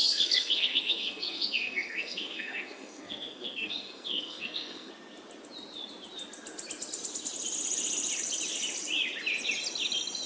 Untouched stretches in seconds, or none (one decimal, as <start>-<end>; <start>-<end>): 4.9-10.3